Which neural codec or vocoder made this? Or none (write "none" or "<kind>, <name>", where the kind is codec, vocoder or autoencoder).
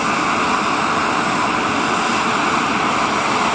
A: vocoder, BigVGAN v2